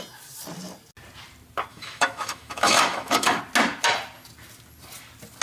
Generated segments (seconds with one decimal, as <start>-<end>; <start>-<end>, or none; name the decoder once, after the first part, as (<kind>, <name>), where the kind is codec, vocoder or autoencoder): 1.7-3.4 (autoencoder, DAC-VAE)